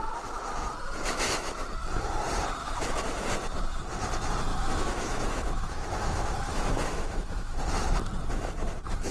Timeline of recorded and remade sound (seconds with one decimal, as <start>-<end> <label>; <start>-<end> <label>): 0.0-2.6 recorded; 2.6-3.3 remade; 3.3-4.5 recorded; 4.5-7.6 remade; 7.6-9.1 recorded